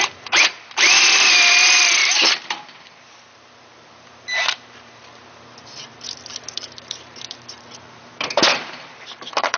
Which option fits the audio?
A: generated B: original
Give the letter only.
A